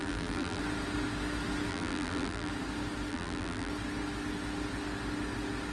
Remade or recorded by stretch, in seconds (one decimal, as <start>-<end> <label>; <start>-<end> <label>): 0.0-0.6 remade; 0.6-1.7 recorded; 1.7-2.5 remade; 2.5-3.1 recorded; 3.1-3.7 remade; 3.7-5.7 recorded